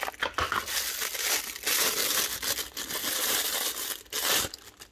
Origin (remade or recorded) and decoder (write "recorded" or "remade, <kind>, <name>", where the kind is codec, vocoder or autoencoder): recorded